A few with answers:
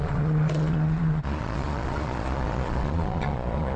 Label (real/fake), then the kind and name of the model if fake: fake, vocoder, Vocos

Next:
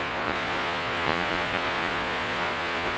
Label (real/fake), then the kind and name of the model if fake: fake, vocoder, Vocos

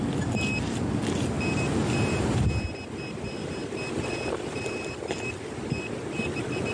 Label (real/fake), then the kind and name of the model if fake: real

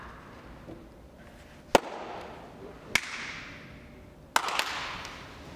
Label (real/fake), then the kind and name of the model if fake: real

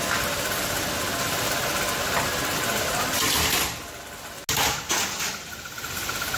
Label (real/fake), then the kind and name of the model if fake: real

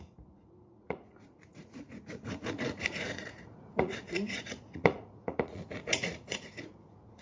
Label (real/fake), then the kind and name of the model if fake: fake, vocoder, Vocos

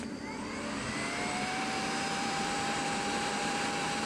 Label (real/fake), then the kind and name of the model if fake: fake, vocoder, BigVGAN v2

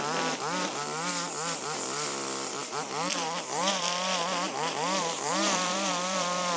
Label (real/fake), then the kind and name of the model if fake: fake, vocoder, BigVGAN v2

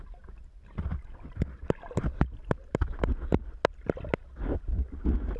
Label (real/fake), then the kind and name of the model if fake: real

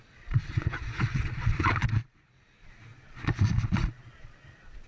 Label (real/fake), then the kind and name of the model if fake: fake, vocoder, Vocos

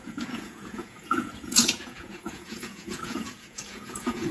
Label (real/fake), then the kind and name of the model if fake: fake, vocoder, Vocos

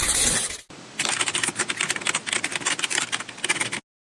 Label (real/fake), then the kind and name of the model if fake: real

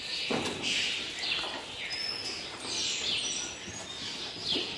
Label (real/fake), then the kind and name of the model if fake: real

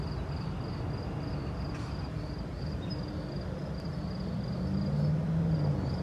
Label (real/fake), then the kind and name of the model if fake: real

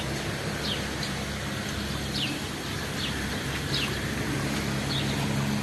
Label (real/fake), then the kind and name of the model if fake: real